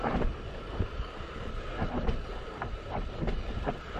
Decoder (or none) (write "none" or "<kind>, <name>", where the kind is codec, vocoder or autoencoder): none